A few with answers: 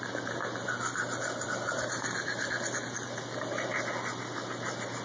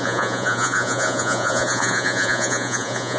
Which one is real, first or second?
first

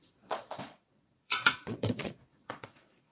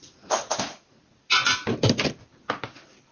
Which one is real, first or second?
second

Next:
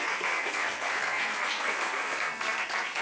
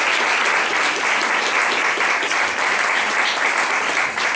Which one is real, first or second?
second